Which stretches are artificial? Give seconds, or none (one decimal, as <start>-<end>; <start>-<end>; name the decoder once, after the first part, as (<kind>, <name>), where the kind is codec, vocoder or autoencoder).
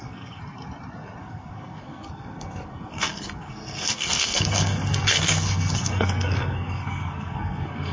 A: 0.0-0.4 (codec, SNAC); 1.2-7.9